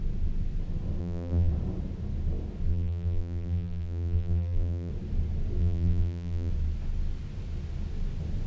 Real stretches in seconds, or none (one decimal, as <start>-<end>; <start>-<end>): 0.0-1.0; 1.5-2.7; 4.9-5.6; 6.5-8.5